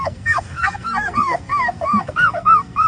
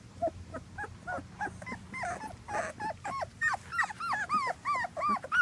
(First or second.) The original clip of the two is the second